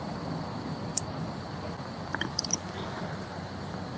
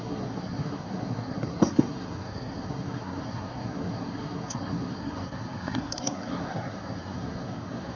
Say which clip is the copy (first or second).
second